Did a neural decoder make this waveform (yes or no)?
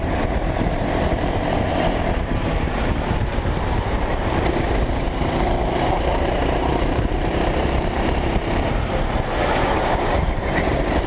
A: yes